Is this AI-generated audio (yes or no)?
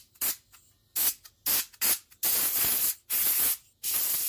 no